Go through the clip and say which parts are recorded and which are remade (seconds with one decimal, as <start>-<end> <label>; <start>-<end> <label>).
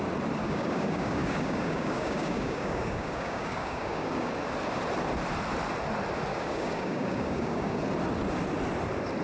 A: 0.0-0.4 recorded; 0.4-4.3 remade; 4.3-6.3 recorded; 6.3-7.8 remade; 7.8-9.2 recorded